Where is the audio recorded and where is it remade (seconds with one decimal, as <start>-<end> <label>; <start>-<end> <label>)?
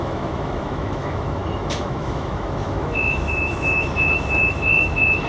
0.0-5.3 remade